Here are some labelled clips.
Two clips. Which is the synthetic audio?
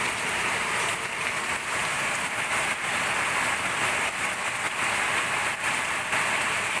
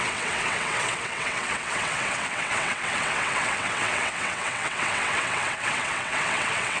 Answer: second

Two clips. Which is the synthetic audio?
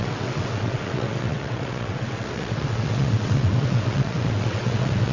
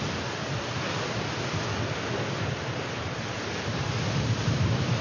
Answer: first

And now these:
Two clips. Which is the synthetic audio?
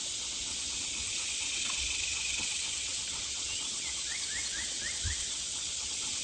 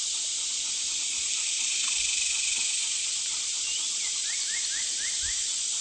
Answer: first